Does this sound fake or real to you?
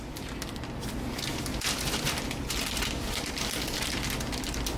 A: fake